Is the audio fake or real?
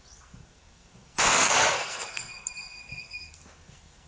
fake